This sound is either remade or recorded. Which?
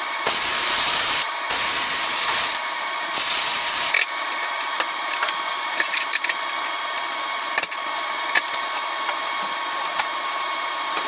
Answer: remade